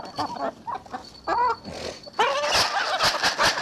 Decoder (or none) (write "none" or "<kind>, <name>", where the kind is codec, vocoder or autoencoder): none